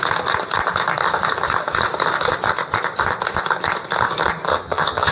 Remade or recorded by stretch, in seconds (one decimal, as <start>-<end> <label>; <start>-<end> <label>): 0.0-4.5 recorded; 4.5-5.1 remade